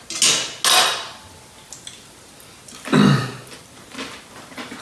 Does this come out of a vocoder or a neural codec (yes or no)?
no